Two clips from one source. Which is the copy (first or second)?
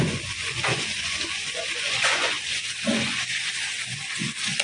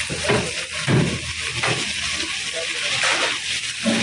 first